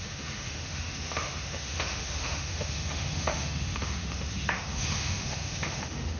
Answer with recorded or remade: remade